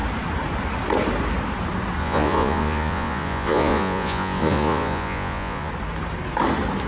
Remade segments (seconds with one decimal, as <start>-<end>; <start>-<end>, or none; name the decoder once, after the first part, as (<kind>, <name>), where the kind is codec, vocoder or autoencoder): 2.0-5.7 (vocoder, Vocos)